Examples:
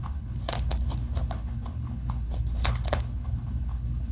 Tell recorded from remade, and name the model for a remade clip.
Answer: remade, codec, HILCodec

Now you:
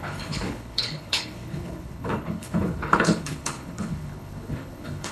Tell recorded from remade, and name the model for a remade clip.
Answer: remade, codec, HILCodec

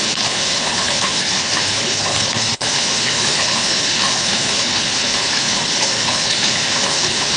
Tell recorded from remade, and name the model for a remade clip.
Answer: remade, codec, HILCodec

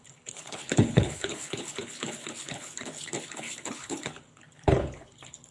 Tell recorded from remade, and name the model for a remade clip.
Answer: remade, codec, HILCodec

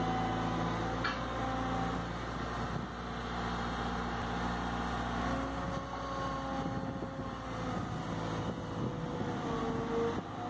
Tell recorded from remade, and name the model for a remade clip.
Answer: recorded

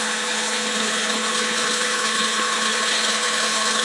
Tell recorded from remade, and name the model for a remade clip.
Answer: remade, codec, HILCodec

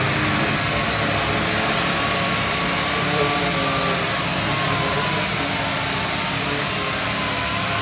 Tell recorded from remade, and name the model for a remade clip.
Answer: recorded